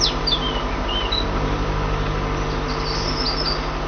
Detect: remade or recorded recorded